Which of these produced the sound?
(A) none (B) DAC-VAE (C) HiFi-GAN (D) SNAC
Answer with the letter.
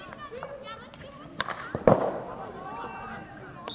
A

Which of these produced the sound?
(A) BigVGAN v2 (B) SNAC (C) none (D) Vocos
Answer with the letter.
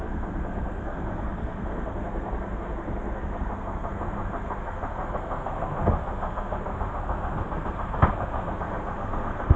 B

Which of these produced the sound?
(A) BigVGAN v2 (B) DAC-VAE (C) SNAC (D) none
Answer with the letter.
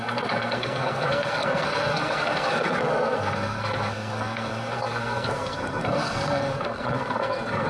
C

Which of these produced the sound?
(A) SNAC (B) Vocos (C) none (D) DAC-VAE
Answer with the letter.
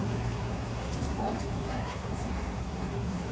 A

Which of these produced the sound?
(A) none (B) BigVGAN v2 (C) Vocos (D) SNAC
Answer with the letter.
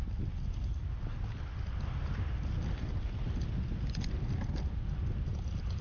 A